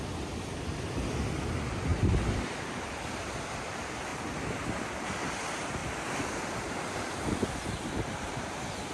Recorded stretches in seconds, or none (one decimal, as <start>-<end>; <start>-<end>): 0.0-4.1; 5.2-8.9